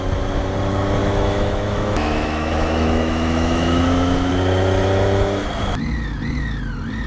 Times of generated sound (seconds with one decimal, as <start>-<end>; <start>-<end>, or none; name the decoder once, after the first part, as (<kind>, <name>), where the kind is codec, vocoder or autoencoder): 1.0-4.3 (autoencoder, DAC-VAE)

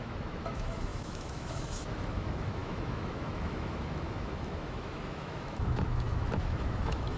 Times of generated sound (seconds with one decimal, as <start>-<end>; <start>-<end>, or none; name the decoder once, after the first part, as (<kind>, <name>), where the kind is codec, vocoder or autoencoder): 0.0-7.2 (autoencoder, DAC-VAE)